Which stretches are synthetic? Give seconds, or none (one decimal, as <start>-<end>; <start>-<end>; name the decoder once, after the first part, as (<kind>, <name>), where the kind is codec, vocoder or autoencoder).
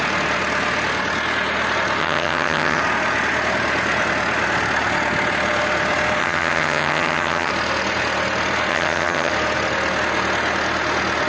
2.0-2.8 (vocoder, HiFi-GAN); 6.2-7.5; 8.7-9.3